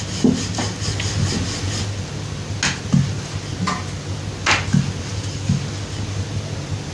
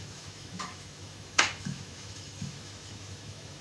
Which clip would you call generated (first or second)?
second